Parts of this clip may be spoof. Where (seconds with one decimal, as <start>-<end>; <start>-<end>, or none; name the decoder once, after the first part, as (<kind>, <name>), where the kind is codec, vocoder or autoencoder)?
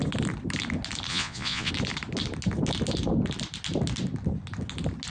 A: 1.1-1.7 (vocoder, Vocos)